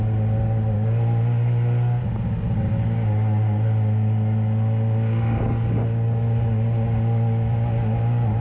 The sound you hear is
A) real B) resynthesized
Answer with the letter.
A